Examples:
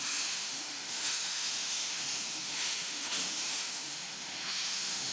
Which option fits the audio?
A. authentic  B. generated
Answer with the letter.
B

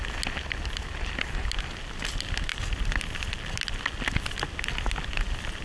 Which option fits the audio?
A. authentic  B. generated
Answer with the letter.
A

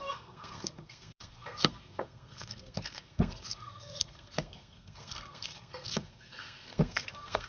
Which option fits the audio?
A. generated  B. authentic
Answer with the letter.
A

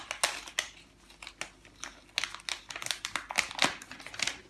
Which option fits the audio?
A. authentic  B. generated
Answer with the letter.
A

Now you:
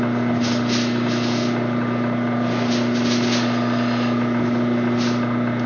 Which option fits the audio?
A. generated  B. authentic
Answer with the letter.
B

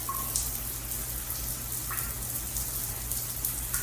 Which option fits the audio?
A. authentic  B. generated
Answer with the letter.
A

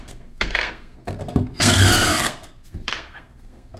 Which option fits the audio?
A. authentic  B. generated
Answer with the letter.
B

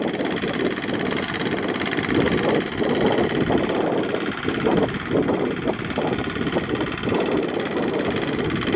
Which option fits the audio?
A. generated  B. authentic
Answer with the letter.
B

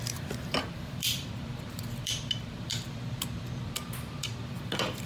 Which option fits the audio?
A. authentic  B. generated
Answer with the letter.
B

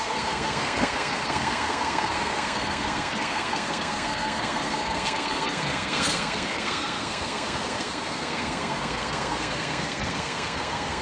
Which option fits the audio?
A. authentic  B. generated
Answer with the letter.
B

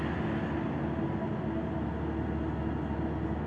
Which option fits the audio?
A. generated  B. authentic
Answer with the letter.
B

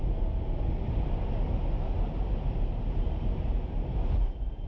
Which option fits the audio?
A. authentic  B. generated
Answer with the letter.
A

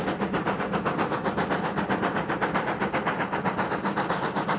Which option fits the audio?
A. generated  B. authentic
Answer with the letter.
B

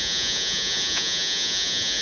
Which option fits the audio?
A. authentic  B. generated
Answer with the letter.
B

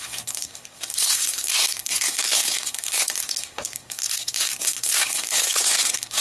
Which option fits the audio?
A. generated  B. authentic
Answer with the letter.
A